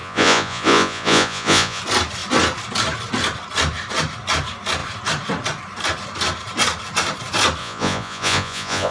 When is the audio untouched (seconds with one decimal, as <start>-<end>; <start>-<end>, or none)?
1.8-7.6